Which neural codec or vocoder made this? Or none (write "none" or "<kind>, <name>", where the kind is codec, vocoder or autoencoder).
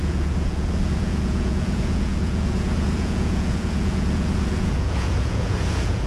vocoder, Vocos